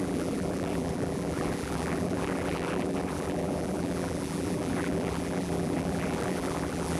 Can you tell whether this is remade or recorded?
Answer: remade